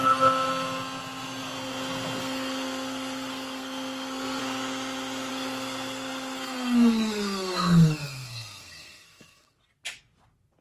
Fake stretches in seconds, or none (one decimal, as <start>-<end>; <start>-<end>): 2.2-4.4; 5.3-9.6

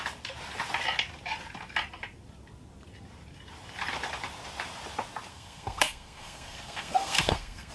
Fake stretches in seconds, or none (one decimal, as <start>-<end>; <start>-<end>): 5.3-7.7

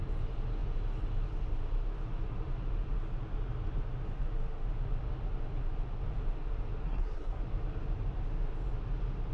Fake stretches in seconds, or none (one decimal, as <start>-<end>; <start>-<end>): 6.8-7.4

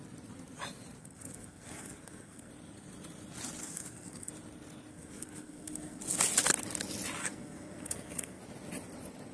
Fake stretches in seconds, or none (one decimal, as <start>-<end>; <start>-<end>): 1.0-2.5; 3.6-4.3; 4.9-6.0; 7.2-8.4

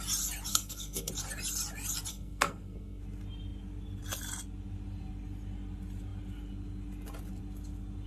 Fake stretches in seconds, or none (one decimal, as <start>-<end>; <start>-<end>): 0.5-1.1; 2.1-3.0

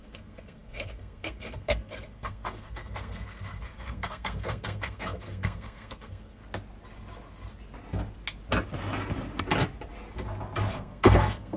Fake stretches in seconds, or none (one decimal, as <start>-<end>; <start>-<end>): 0.0-6.4; 10.7-11.6

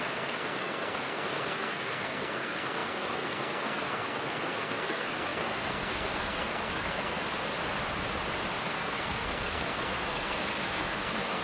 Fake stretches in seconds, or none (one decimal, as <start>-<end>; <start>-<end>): 0.0-7.2; 8.7-11.4

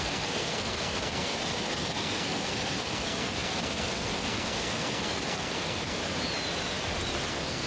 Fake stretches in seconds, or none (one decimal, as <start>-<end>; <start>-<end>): 0.0-6.0; 7.3-7.7